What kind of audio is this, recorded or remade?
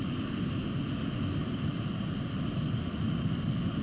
recorded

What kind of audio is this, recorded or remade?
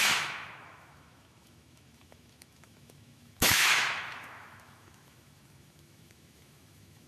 remade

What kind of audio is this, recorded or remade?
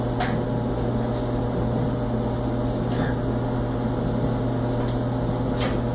recorded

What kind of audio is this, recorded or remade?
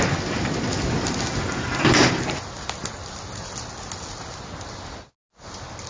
recorded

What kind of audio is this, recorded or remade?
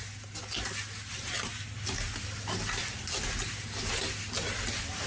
recorded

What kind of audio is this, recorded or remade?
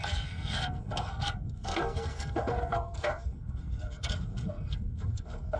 remade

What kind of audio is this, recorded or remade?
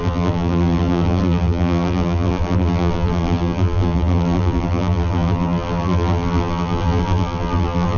remade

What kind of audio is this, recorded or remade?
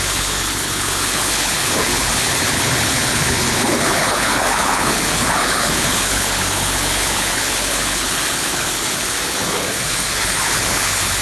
remade